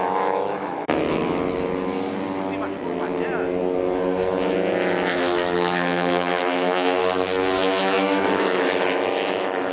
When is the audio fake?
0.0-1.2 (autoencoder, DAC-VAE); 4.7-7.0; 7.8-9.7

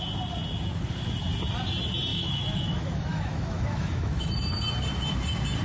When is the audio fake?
2.1-4.3 (autoencoder, DAC-VAE)